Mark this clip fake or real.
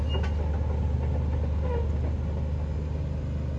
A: real